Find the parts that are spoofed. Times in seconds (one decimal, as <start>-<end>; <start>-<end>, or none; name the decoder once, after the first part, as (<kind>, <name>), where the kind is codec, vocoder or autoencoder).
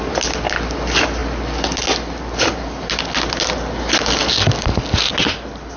none